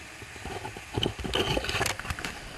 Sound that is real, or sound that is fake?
real